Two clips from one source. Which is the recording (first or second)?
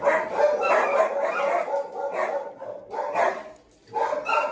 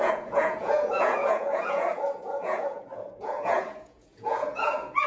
first